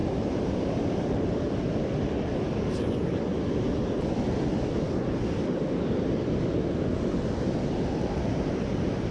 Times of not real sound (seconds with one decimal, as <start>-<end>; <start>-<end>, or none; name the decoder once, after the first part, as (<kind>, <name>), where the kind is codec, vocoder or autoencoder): 0.0-0.6 (vocoder, BigVGAN v2); 3.3-6.0